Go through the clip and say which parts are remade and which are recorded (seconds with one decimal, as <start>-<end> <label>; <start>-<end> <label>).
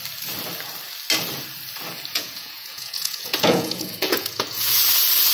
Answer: 0.0-2.1 recorded; 2.1-4.8 remade; 4.8-5.3 recorded